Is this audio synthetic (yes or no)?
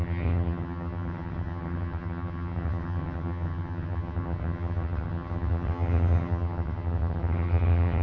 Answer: yes